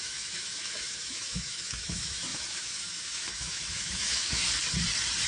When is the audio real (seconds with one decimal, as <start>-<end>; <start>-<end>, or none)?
4.4-5.3